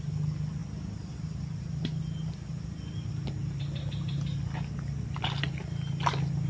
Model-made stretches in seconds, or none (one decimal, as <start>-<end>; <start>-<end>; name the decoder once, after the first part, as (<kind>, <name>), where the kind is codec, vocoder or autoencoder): 0.0-6.5 (vocoder, BigVGAN v2)